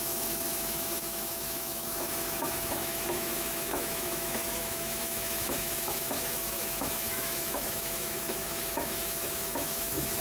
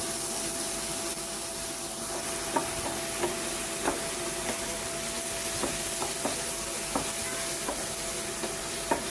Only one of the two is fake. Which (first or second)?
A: first